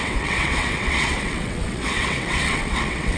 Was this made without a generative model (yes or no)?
no